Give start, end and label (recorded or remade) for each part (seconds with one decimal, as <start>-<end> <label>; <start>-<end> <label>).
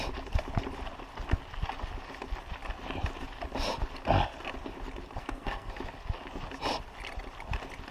0.0-5.2 recorded; 5.2-5.7 remade; 5.7-7.9 recorded